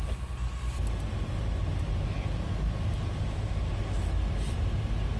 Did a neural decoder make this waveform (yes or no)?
no